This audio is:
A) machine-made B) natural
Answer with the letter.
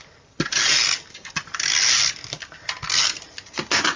B